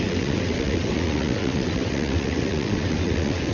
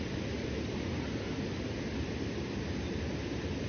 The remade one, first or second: first